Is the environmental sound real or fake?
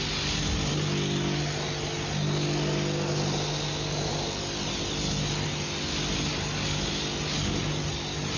real